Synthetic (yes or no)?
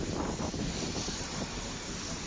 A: no